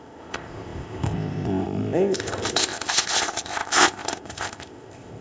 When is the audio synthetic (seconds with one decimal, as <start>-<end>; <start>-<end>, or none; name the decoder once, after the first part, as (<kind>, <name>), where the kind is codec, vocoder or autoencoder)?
0.0-5.2 (codec, ZipCodec)